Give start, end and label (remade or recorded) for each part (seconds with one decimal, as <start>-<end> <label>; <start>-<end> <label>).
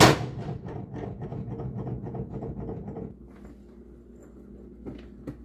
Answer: 0.0-1.3 recorded; 1.3-2.5 remade; 2.5-5.4 recorded